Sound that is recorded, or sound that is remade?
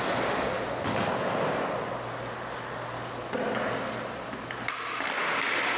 recorded